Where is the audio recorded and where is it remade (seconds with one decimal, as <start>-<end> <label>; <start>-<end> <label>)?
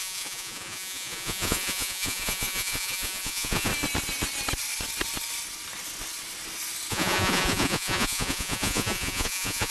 0.0-3.7 remade; 3.7-6.9 recorded; 6.9-9.7 remade